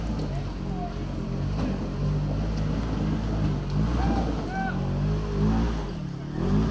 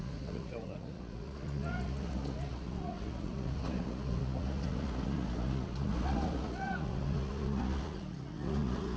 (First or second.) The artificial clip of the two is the second